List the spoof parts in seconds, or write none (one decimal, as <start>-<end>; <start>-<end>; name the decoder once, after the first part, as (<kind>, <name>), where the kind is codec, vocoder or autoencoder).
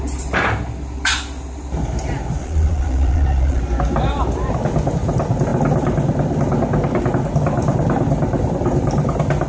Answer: 2.4-3.6 (vocoder, Vocos)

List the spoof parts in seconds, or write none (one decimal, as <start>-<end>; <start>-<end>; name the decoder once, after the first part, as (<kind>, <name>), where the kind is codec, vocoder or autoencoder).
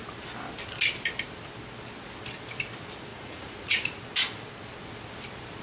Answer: 3.1-4.0 (vocoder, Vocos)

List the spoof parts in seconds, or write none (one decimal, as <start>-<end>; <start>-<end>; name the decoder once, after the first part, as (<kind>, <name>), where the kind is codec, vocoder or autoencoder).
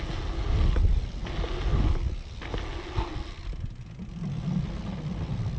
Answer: none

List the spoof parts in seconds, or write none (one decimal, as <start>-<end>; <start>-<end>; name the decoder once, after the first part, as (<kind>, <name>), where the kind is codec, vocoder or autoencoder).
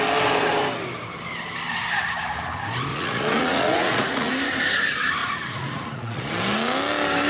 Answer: 2.9-4.3 (vocoder, Vocos); 5.2-6.3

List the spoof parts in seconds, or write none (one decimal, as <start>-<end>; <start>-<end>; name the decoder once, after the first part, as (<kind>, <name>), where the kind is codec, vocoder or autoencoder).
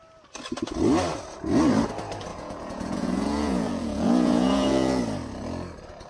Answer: 2.3-5.0 (vocoder, Vocos)